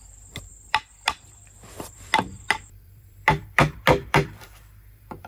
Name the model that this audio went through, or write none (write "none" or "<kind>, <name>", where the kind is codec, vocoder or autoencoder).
vocoder, BigVGAN v2